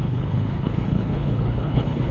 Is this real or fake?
fake